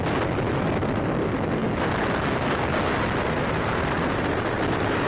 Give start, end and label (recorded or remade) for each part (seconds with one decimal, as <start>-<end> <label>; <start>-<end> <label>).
0.0-5.1 recorded